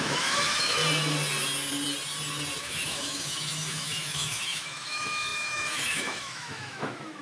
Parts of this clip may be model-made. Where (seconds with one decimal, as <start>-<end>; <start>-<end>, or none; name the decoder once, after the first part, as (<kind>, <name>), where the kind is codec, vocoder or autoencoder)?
0.0-0.8 (autoencoder, DAC-VAE); 2.6-7.2